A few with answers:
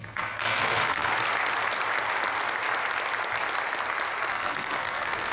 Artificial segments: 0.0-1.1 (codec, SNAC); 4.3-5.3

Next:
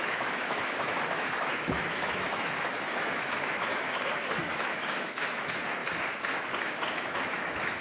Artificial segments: 0.0-5.8 (autoencoder, DAC-VAE); 6.6-7.8